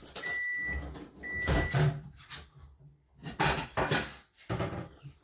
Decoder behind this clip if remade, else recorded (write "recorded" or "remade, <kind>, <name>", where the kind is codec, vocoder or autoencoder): recorded